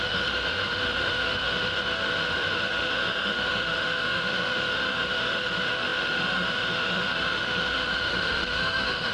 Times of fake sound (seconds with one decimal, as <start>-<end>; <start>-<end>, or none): 0.0-9.1